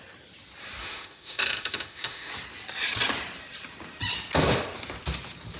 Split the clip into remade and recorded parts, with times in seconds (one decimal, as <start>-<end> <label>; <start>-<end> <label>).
0.0-0.8 recorded; 0.8-2.3 remade; 2.3-5.6 recorded